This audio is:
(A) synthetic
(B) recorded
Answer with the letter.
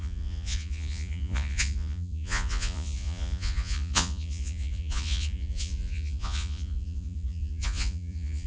A